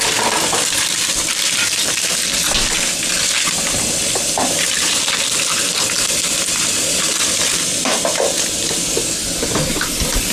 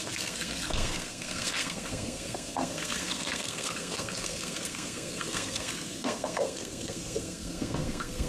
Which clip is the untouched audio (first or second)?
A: first